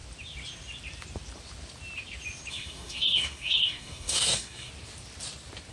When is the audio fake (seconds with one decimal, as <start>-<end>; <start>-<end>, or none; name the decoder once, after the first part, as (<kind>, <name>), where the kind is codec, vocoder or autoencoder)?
2.5-4.7 (codec, SNAC)